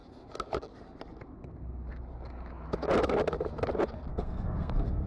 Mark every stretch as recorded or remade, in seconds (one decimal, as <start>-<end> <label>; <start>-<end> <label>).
0.0-4.1 recorded; 4.1-5.1 remade